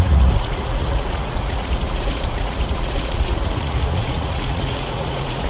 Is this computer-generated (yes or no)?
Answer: yes